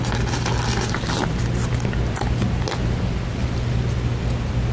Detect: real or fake real